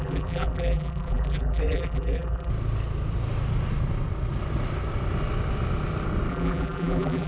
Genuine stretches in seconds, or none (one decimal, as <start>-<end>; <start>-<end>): 2.5-6.3